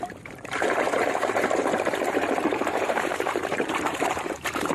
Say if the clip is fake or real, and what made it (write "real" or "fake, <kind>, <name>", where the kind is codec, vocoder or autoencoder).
fake, vocoder, BigVGAN v2